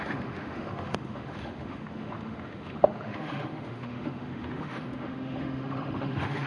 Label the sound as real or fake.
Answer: fake